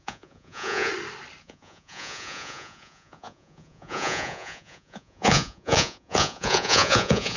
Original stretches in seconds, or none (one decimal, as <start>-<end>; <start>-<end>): 0.9-1.4